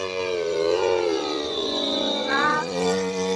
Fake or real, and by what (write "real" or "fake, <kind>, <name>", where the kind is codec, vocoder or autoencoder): fake, vocoder, Vocos